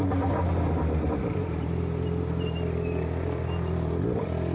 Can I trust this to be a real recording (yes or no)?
yes